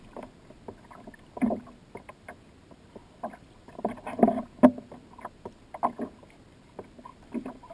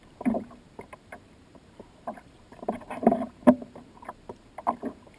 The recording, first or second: first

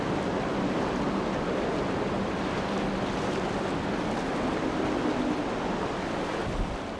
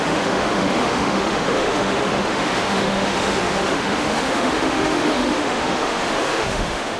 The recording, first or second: first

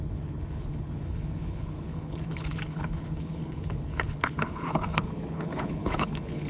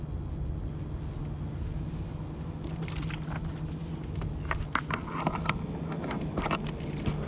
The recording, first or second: second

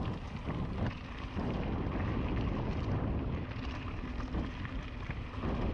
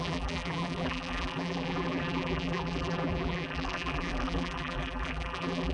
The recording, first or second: first